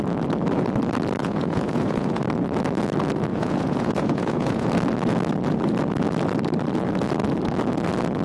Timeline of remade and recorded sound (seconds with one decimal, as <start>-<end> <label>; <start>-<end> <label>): 0.0-1.2 recorded; 1.2-2.2 remade; 2.2-3.3 recorded; 3.3-4.7 remade; 4.7-8.2 recorded